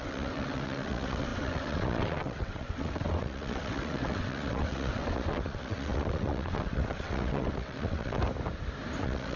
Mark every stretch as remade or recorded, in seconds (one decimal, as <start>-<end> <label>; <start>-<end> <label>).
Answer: 0.0-8.2 remade; 8.2-9.0 recorded; 9.0-9.4 remade